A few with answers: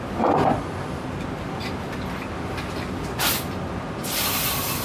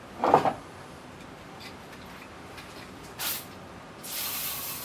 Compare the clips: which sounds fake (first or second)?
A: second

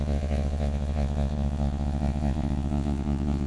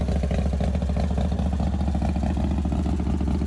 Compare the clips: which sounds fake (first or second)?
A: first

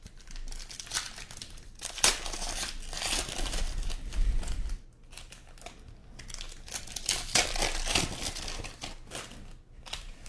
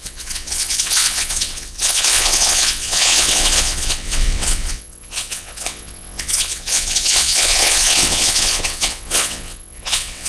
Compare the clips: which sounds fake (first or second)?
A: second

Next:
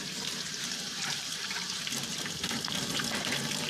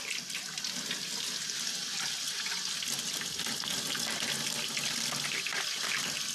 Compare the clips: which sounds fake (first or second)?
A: first